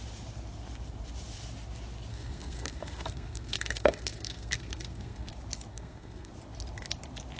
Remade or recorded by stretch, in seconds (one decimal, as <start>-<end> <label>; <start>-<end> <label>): 0.0-2.1 recorded; 2.1-5.3 remade; 5.3-5.7 recorded; 5.7-6.3 remade; 6.3-7.4 recorded